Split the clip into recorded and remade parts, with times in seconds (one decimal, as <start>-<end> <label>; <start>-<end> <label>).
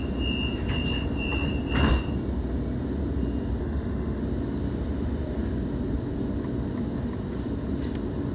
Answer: 0.0-3.6 recorded; 3.6-4.2 remade; 4.2-8.3 recorded